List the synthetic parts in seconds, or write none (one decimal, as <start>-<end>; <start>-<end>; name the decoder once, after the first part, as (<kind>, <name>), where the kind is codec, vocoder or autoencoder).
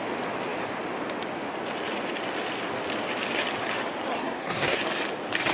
4.2-4.8 (codec, SNAC)